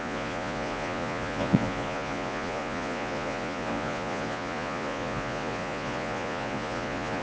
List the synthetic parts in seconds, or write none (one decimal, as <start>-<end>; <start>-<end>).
0.0-7.2